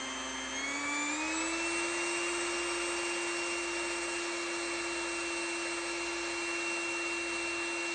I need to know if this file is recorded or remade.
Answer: recorded